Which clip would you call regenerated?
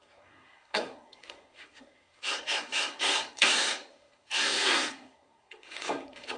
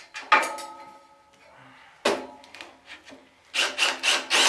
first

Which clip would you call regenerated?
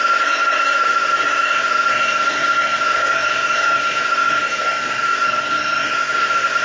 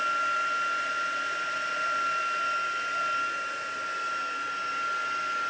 first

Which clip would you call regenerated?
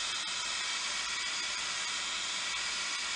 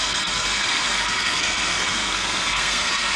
second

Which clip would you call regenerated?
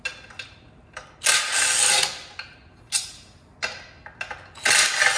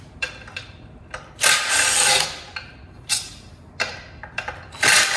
second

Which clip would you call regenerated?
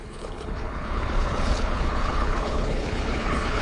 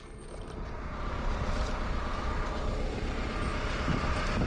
first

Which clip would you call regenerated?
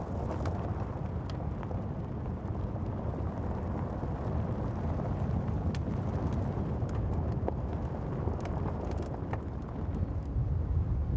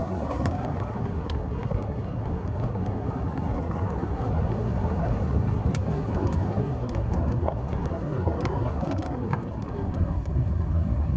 second